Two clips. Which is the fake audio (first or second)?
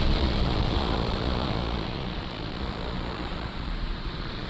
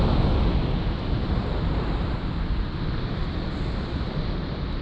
first